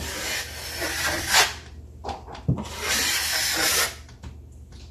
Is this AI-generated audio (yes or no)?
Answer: no